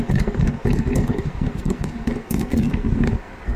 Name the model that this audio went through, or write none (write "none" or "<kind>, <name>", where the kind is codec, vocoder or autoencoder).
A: codec, SNAC